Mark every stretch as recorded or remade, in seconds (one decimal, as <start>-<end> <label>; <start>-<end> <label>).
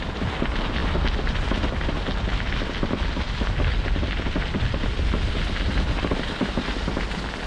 0.0-7.5 recorded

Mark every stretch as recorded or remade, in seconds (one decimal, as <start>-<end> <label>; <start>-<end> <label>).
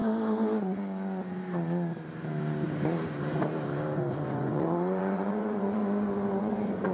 0.0-4.1 recorded; 4.1-5.8 remade; 5.8-6.4 recorded; 6.4-6.9 remade